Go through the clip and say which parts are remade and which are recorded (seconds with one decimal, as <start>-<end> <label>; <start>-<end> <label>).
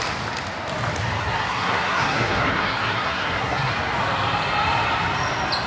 0.0-1.2 recorded; 1.2-3.7 remade; 3.7-5.7 recorded